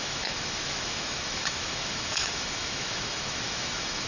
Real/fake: fake